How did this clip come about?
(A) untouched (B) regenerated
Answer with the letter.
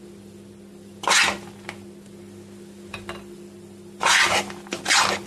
A